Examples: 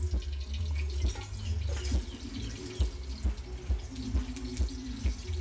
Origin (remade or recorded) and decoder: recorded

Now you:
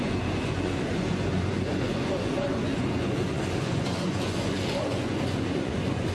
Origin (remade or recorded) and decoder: remade, vocoder, Vocos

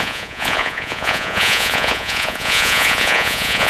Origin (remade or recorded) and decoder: remade, vocoder, Vocos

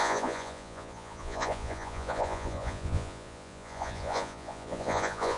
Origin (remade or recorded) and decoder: remade, vocoder, Vocos